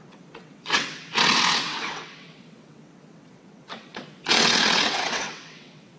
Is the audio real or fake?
fake